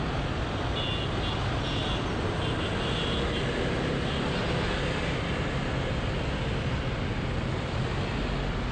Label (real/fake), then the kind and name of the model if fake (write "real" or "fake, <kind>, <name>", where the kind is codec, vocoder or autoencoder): real